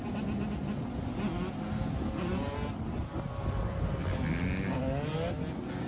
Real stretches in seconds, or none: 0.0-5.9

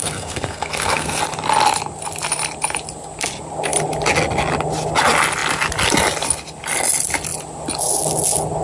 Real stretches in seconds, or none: 1.2-8.6

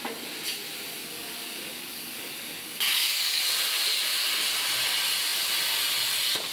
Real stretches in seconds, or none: 0.0-1.0; 3.4-6.5